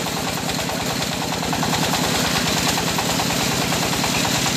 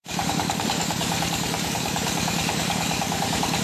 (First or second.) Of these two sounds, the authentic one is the first